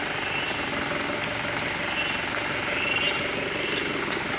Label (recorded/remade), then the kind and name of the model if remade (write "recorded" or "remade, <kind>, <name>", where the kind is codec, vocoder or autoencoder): recorded